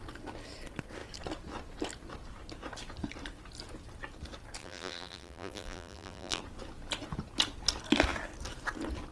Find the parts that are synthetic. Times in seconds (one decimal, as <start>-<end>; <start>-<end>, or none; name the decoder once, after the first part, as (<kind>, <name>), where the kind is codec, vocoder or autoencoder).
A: 4.6-6.4 (vocoder, BigVGAN v2)